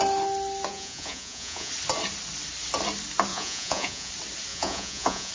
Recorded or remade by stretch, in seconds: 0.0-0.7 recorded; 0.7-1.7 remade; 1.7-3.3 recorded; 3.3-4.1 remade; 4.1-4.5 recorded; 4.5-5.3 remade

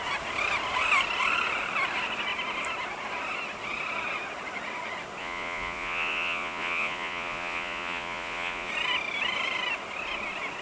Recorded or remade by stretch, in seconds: 0.0-5.2 recorded; 5.2-8.7 remade; 8.7-10.6 recorded

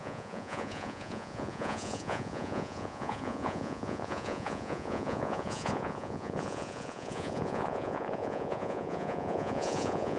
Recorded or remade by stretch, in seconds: 0.0-10.2 remade